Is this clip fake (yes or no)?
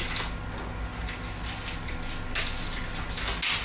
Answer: no